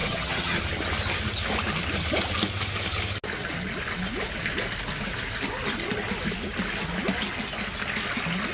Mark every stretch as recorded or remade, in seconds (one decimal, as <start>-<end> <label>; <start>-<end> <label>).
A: 0.0-0.6 remade; 0.6-8.5 recorded